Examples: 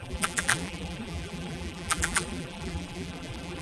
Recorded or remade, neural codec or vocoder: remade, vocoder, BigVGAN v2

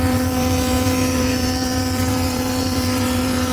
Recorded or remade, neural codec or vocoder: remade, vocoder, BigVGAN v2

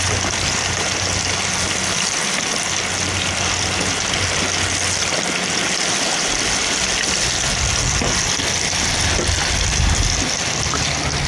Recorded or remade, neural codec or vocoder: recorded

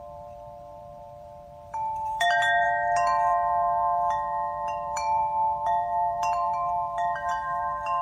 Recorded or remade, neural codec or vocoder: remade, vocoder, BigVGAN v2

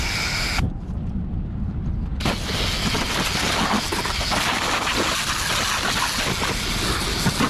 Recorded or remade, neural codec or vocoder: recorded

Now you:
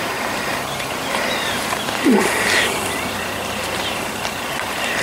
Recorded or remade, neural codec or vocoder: remade, vocoder, BigVGAN v2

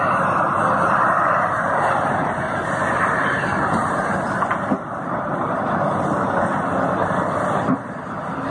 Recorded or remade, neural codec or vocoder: recorded